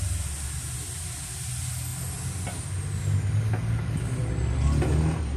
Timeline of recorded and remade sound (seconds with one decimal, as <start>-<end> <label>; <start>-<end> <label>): 0.0-5.4 recorded